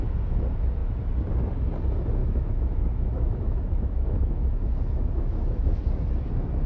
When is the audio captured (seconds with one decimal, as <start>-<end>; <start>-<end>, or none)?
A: 0.0-2.2; 5.8-6.7